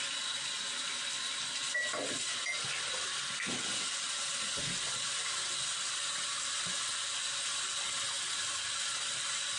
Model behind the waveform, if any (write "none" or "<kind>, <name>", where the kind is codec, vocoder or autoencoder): none